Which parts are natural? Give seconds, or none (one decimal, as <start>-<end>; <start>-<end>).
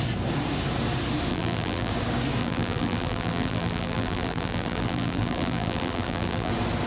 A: 0.0-1.3; 1.9-2.4; 6.5-6.9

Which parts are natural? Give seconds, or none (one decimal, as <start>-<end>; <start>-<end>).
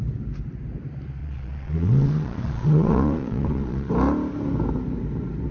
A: 0.0-1.2; 3.9-5.5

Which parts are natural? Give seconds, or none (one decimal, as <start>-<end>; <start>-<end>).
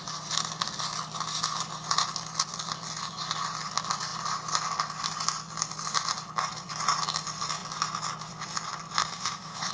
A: 0.0-9.0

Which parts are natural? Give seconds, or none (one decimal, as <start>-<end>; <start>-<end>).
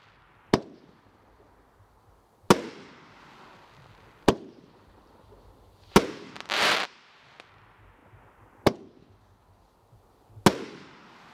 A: 0.0-11.3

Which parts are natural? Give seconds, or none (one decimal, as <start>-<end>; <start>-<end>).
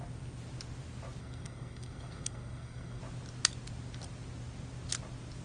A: 0.0-1.2; 3.0-5.4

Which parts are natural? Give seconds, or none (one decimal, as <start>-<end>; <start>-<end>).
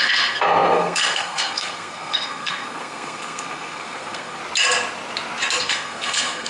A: 4.4-5.6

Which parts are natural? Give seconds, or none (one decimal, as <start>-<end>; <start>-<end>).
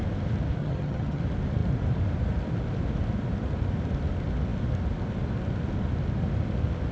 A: 0.0-0.6; 1.2-6.9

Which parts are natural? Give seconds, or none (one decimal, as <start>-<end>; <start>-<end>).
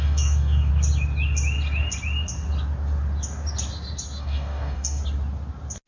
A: 0.7-4.2; 5.0-5.9